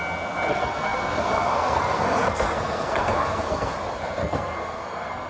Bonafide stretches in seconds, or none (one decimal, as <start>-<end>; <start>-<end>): 0.0-0.5; 3.7-4.2